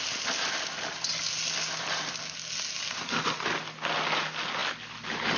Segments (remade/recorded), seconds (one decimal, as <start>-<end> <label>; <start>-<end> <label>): 0.0-5.4 recorded